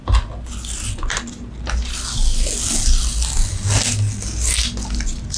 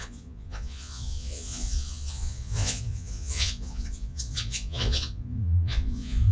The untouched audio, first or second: first